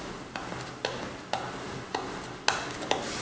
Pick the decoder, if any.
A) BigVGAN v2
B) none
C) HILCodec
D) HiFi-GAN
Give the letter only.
B